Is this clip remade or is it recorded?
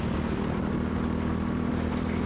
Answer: recorded